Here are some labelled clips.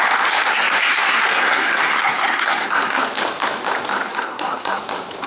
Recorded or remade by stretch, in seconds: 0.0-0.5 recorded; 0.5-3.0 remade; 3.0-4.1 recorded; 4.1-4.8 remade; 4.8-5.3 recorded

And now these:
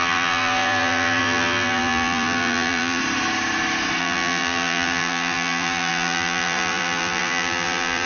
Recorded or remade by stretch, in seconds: 0.0-3.0 remade; 3.0-4.0 recorded; 4.0-8.1 remade

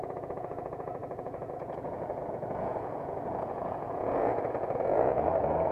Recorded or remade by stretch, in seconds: 0.0-5.7 remade

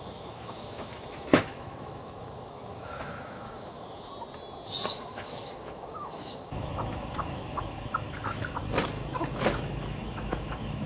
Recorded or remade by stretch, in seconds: 0.0-4.1 remade; 4.1-4.9 recorded; 4.9-8.6 remade; 8.6-9.5 recorded; 9.5-10.9 remade

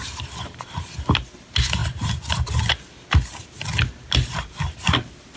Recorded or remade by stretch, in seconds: 0.0-5.4 recorded

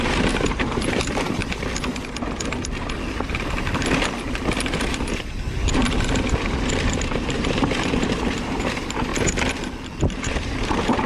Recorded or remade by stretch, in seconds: 0.0-1.4 remade; 1.4-4.7 recorded; 4.7-5.8 remade; 5.8-7.1 recorded; 7.1-9.1 remade; 9.1-10.0 recorded; 10.0-11.1 remade